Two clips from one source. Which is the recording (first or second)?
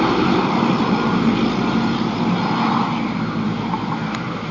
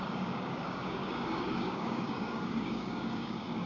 first